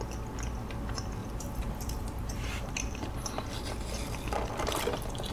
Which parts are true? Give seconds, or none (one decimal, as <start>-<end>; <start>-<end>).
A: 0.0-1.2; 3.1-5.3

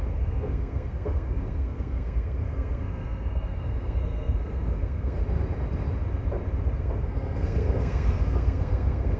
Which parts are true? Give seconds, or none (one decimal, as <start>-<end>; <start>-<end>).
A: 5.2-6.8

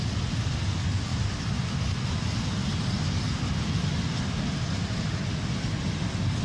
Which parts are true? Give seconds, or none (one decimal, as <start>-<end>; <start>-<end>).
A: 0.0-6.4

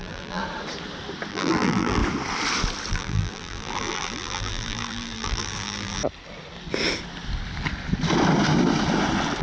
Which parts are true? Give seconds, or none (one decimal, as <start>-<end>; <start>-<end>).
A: 0.4-1.3; 2.0-2.9; 6.0-9.4

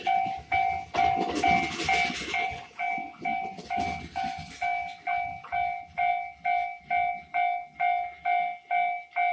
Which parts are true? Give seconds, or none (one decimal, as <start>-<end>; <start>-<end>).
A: 0.0-9.3

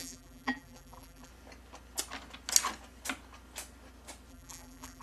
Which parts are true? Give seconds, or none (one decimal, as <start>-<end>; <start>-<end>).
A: 1.3-4.3

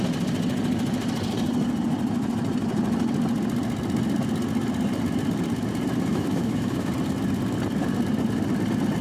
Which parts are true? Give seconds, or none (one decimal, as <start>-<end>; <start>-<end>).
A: 0.0-6.1; 6.9-9.0

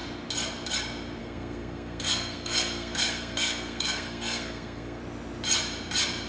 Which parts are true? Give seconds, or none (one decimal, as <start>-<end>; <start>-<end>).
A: 0.0-1.2; 5.0-6.3